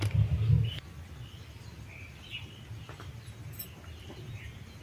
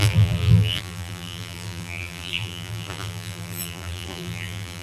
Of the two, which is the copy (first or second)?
second